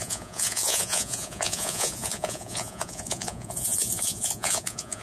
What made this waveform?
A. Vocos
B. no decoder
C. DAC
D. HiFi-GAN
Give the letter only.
A